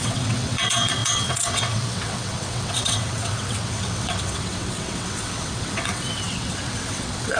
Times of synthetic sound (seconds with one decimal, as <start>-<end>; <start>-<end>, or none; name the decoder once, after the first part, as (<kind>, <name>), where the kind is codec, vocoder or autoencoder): 0.0-7.4 (vocoder, WaveNeXt)